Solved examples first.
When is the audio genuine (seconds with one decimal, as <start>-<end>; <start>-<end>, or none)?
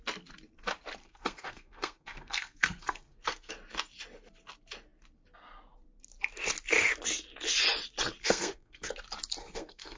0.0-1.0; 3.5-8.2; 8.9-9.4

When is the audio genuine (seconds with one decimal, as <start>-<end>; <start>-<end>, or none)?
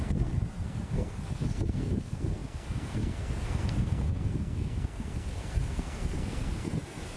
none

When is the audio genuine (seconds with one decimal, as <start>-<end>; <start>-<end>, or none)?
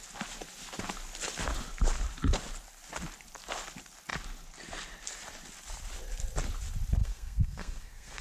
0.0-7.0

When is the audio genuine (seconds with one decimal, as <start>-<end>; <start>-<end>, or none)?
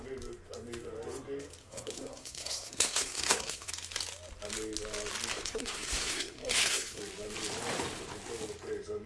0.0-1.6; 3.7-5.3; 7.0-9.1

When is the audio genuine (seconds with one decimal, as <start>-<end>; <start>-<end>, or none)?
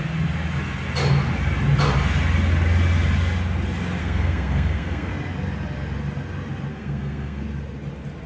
0.0-4.0; 5.1-6.7; 7.4-8.3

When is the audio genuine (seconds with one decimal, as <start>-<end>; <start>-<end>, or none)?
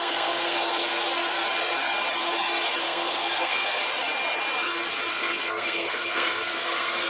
0.7-2.8; 3.8-5.1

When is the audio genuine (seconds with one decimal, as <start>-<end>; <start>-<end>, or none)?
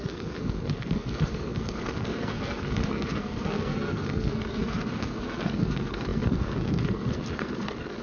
none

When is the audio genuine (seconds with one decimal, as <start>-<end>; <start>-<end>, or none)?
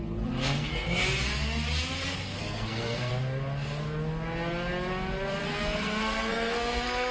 1.0-2.1; 3.1-5.4